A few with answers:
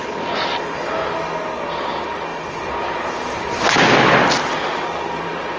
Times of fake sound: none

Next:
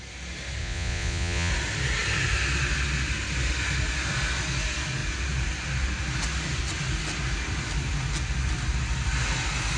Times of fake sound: 0.6-1.5 (vocoder, Vocos)

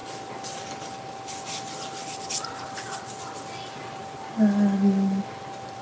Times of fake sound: none

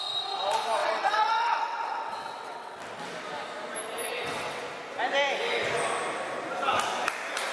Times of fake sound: 0.8-2.8 (vocoder, WaveNeXt); 4.1-4.6